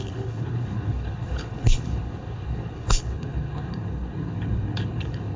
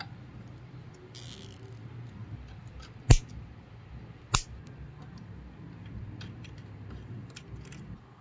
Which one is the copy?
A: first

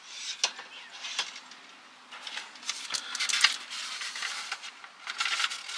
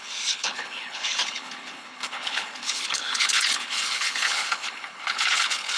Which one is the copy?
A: second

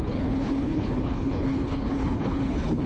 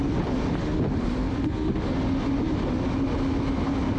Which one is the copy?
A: first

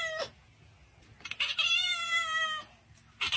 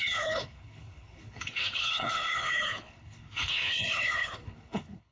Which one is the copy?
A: second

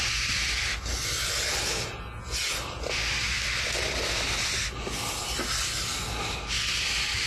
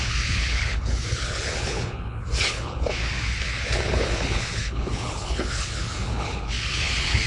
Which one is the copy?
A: second